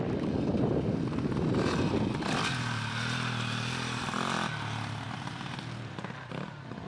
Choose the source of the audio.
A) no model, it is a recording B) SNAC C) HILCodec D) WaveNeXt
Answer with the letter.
A